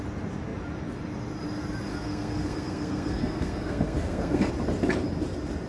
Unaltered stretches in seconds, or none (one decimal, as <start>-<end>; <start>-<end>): 0.0-1.9; 4.5-5.7